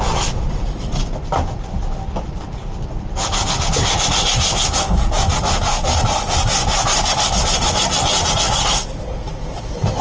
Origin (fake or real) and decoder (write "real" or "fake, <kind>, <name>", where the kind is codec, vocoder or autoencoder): real